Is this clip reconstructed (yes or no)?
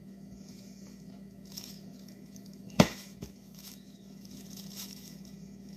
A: yes